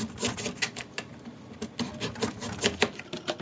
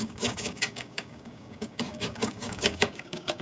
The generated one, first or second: second